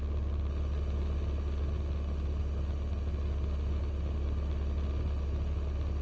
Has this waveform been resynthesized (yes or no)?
no